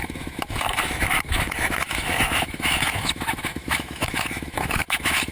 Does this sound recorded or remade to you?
remade